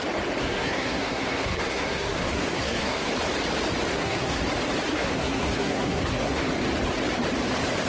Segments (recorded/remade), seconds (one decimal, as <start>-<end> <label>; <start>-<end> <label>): 0.0-0.4 recorded; 0.4-3.1 remade; 3.1-3.9 recorded; 3.9-4.4 remade; 4.4-4.9 recorded; 4.9-6.4 remade; 6.4-7.9 recorded